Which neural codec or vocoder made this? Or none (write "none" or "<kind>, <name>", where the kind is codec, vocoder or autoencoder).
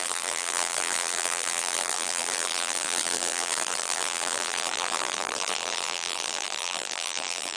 vocoder, BigVGAN v2